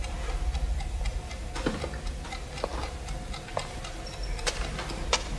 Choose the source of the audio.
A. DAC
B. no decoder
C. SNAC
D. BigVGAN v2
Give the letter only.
B